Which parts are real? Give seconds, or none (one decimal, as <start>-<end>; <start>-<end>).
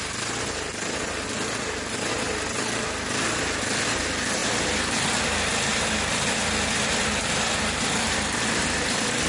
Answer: 0.0-9.3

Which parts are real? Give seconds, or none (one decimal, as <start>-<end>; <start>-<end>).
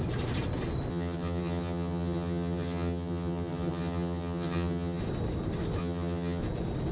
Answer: 0.0-0.9; 5.0-5.8; 6.4-6.9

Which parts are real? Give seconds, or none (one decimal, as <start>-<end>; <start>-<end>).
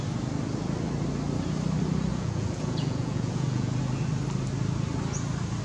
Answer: 0.0-2.1; 3.8-5.6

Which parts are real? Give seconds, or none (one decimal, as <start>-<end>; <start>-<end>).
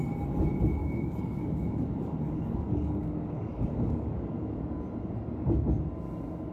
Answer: 0.0-0.8; 4.6-6.5